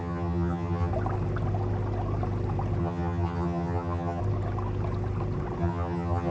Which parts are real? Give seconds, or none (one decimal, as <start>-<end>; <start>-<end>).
0.9-2.8; 4.2-5.6